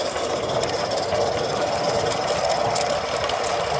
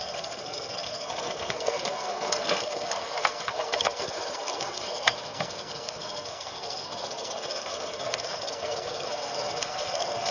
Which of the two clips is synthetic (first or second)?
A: second